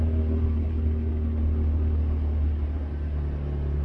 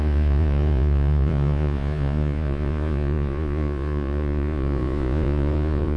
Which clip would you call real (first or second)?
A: first